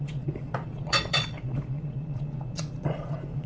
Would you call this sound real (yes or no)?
no